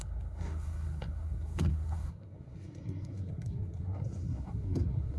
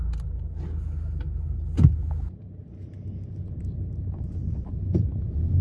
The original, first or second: second